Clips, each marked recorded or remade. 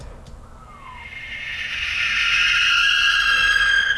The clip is recorded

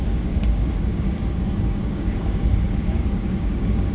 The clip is remade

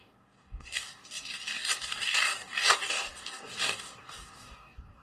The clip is remade